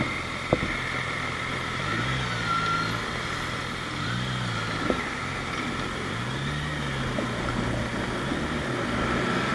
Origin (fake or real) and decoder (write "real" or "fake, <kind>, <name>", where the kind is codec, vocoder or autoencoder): real